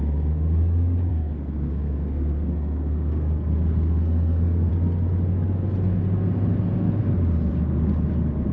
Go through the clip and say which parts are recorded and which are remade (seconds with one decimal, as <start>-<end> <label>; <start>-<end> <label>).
0.0-1.1 recorded; 1.1-4.7 remade; 4.7-8.5 recorded